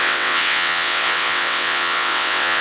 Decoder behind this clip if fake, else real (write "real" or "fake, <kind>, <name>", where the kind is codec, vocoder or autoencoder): fake, vocoder, WaveNeXt